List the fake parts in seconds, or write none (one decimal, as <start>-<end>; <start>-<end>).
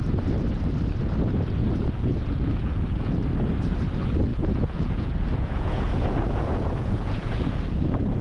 1.6-3.2; 4.3-8.2